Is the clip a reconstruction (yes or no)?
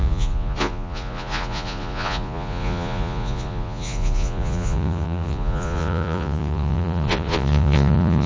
yes